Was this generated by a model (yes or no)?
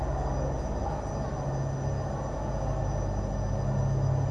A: no